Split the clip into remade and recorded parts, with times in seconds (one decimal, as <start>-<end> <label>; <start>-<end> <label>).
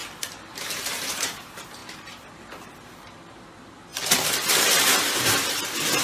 0.0-0.6 recorded; 0.6-3.9 remade; 3.9-4.7 recorded; 4.7-6.0 remade